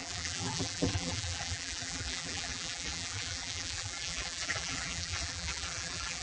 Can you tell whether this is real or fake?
fake